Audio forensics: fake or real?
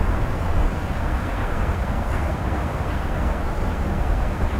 fake